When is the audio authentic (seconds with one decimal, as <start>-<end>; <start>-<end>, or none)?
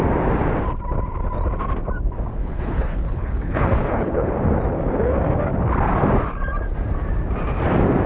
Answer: 0.0-2.4; 4.3-8.1